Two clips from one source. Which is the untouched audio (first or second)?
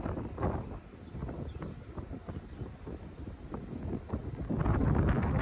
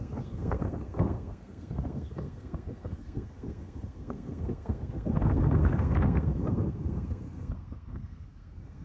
first